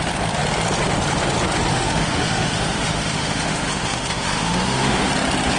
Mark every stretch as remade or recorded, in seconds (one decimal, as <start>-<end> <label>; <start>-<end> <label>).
0.0-1.7 recorded; 1.7-5.1 remade; 5.1-5.6 recorded